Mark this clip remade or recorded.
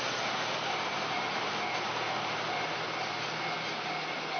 remade